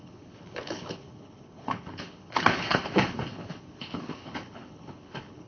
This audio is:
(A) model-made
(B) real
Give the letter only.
A